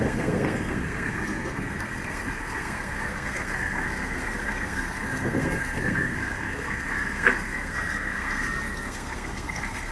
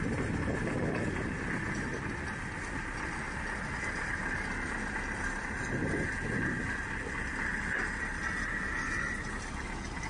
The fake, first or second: first